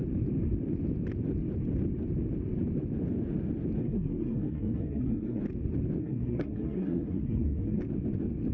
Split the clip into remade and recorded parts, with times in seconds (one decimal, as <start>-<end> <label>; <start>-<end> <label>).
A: 0.0-3.8 recorded; 3.8-5.4 remade; 5.4-6.0 recorded; 6.0-7.8 remade; 7.8-8.5 recorded